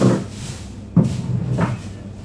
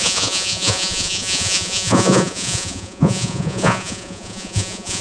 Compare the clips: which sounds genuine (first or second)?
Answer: first